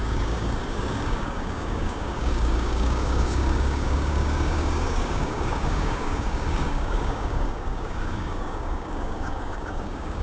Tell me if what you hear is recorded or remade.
remade